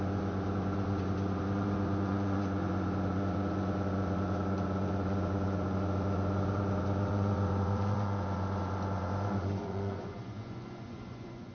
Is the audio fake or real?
fake